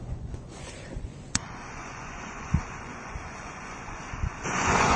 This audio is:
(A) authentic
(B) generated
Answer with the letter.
B